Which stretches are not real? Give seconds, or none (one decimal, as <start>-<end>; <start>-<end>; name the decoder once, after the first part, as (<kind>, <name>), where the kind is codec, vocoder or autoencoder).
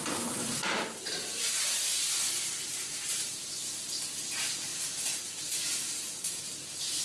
0.4-3.6 (vocoder, BigVGAN v2); 4.7-6.4